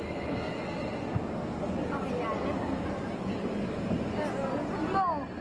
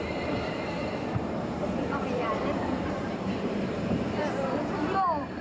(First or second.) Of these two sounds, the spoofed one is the second